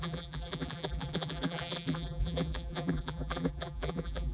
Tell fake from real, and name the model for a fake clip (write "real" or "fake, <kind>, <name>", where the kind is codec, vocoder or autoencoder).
fake, vocoder, BigVGAN v2